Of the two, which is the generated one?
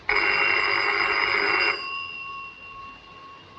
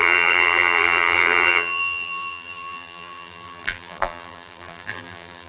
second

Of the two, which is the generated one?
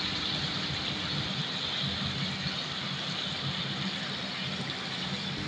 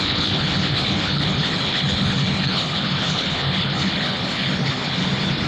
second